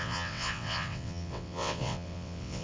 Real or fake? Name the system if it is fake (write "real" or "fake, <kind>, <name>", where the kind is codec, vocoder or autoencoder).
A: fake, vocoder, WaveNeXt